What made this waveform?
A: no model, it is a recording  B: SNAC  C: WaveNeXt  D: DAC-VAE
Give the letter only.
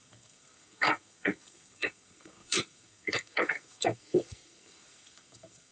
B